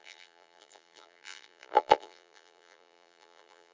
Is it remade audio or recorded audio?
remade